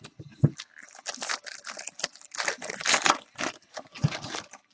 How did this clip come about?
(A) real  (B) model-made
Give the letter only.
A